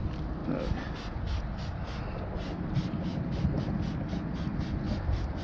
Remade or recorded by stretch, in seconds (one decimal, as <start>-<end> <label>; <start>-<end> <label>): 0.0-5.4 recorded